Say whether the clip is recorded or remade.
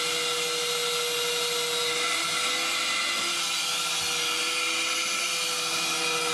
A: recorded